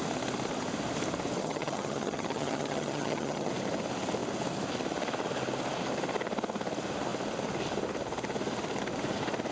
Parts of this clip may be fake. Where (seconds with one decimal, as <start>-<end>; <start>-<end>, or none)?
1.4-3.5